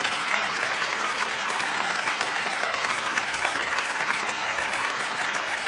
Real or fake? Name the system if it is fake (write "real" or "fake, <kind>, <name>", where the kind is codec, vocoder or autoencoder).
fake, codec, SNAC